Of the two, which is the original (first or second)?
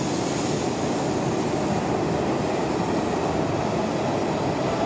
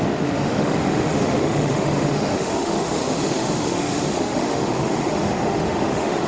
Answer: first